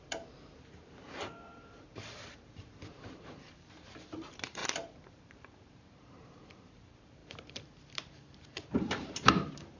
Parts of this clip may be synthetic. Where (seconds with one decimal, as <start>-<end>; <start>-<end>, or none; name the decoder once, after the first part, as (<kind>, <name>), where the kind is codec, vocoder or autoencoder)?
0.0-4.6 (vocoder, BigVGAN v2); 5.1-9.8